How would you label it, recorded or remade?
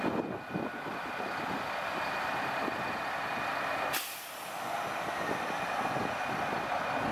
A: recorded